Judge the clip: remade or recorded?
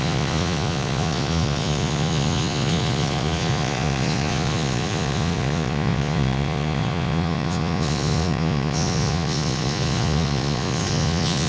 remade